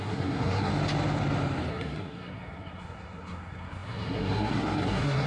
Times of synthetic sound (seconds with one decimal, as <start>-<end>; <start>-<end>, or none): 0.0-0.7; 1.7-5.3